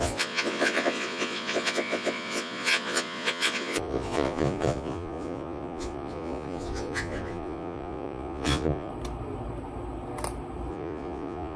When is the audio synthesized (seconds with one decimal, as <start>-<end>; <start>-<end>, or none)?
0.0-8.9; 10.7-11.6